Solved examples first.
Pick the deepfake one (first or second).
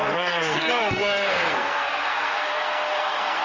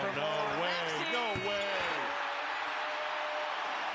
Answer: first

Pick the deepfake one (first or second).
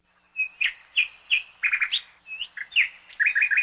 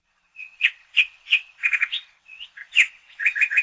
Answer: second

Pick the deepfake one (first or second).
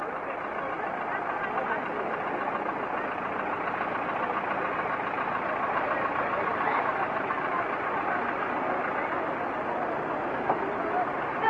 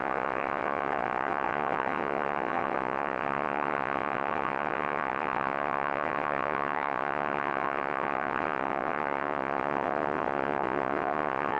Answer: second